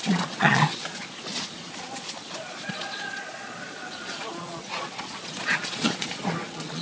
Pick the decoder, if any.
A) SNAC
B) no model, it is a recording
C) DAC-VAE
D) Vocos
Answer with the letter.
D